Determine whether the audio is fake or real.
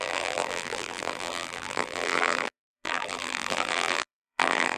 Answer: fake